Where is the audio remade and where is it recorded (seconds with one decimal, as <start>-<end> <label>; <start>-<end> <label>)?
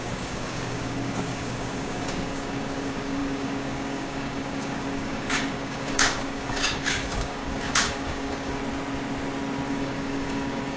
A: 0.0-8.6 remade; 8.6-9.7 recorded; 9.7-10.8 remade